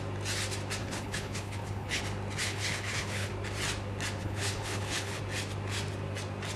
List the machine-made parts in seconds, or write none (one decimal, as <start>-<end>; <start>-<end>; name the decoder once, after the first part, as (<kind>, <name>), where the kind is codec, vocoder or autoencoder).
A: 0.8-2.0 (codec, HILCodec); 2.4-3.3; 4.2-5.2